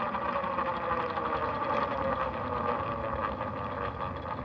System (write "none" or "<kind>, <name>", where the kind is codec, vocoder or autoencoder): none